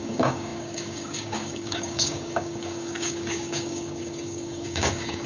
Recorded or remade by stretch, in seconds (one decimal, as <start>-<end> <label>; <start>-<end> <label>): 0.0-5.3 remade